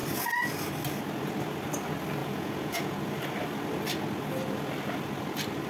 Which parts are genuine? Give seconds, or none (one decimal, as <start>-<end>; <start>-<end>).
0.0-2.2; 3.1-5.7